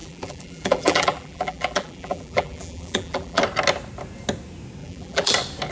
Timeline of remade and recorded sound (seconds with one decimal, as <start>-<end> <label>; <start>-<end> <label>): 0.0-3.4 remade; 3.4-4.8 recorded; 4.8-5.3 remade; 5.3-5.7 recorded